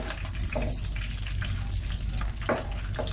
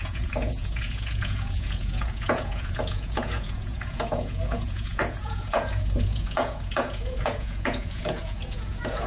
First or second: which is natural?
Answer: first